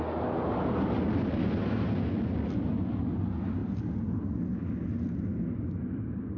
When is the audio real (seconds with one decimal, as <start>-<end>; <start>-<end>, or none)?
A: 0.0-6.4